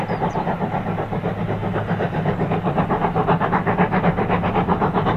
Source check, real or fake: real